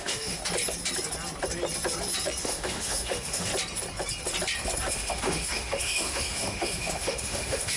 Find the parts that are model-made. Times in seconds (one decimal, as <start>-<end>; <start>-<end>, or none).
0.0-0.4; 2.4-3.5; 4.9-7.8